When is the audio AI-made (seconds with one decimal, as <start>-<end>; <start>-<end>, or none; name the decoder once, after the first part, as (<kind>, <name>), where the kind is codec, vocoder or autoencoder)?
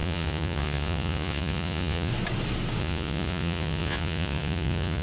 0.0-2.1 (vocoder, Vocos); 2.8-5.0